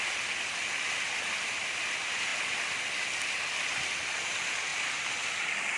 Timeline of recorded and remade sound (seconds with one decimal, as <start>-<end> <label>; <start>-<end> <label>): 0.0-5.8 recorded

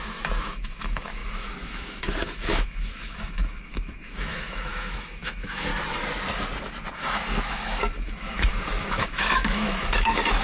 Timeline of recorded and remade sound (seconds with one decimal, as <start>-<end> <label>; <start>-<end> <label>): 0.0-5.7 remade; 5.7-6.9 recorded; 6.9-10.4 remade

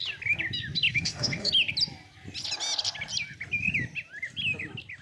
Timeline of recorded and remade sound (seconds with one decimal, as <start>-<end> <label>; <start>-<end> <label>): 0.0-0.9 recorded; 0.9-1.5 remade; 1.5-5.0 recorded

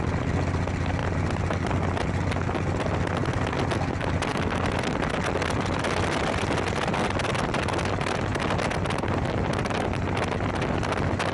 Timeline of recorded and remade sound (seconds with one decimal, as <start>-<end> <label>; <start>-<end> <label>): 0.0-11.3 recorded

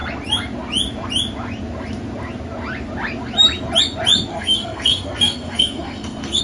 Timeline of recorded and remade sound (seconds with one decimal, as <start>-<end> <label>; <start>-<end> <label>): 0.0-4.3 recorded; 4.3-6.4 remade

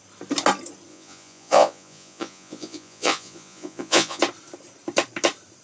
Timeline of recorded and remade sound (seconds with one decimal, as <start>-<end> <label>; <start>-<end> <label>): 0.0-0.9 recorded; 0.9-4.2 remade; 4.2-5.6 recorded

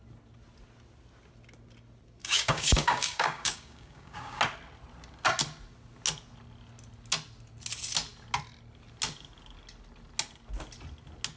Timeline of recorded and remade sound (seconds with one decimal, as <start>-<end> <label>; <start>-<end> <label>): 0.0-2.2 recorded; 2.2-4.4 remade; 4.4-11.4 recorded

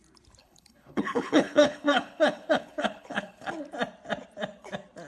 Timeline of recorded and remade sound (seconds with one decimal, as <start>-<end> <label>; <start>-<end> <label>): 0.0-0.4 recorded; 0.4-3.5 remade; 3.5-5.1 recorded